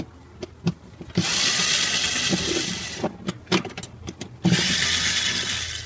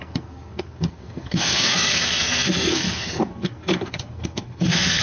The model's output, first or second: second